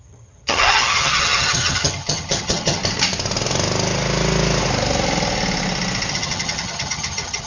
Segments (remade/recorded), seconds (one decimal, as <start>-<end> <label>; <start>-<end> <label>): 0.0-2.8 remade; 2.8-6.1 recorded; 6.1-7.5 remade